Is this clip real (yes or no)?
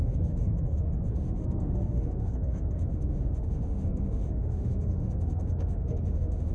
no